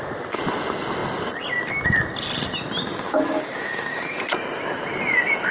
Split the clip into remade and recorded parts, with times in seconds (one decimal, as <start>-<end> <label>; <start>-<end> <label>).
0.0-2.9 recorded; 2.9-4.0 remade; 4.0-5.5 recorded